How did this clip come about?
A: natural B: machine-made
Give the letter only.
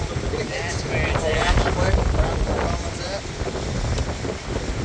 A